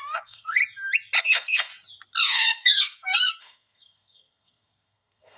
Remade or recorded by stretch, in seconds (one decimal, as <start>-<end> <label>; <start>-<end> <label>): 0.0-0.6 remade; 0.6-1.2 recorded; 1.2-1.7 remade; 1.7-2.2 recorded; 2.2-5.4 remade